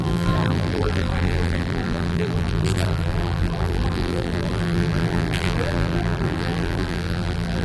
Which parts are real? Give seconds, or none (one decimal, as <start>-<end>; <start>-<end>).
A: none